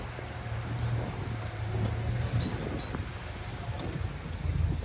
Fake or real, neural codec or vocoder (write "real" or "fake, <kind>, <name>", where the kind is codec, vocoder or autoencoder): real